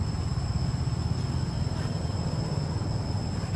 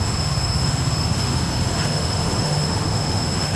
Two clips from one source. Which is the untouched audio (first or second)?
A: first